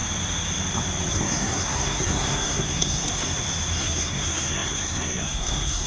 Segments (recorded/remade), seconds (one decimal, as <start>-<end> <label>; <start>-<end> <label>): 0.0-1.1 recorded; 1.1-3.0 remade; 3.0-3.8 recorded; 3.8-5.9 remade